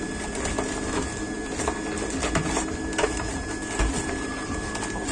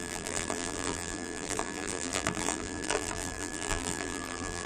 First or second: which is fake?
second